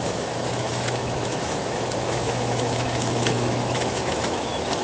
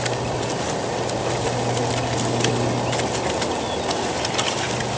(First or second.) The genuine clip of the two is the second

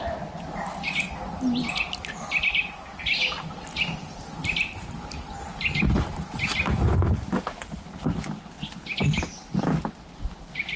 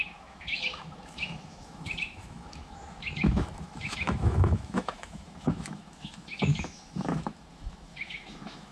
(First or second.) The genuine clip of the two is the first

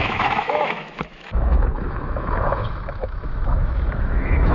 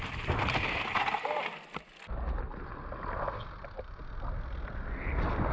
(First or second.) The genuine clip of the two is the second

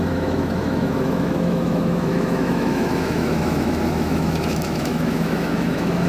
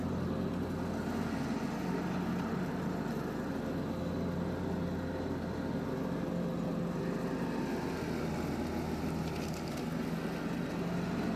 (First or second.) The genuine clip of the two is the second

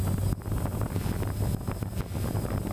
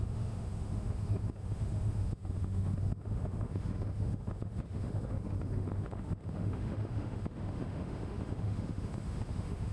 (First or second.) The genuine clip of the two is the first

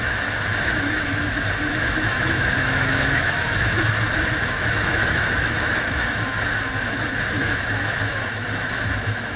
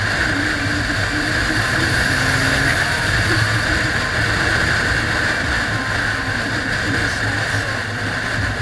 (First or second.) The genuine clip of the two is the second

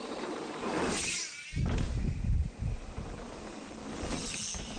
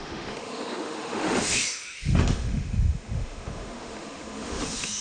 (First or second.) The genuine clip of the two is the first